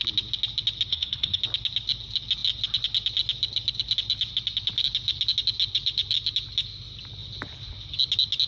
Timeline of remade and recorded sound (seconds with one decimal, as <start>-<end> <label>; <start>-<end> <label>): 0.0-0.9 recorded; 0.9-1.4 remade; 1.4-8.5 recorded